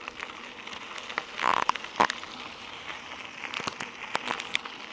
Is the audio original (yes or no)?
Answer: yes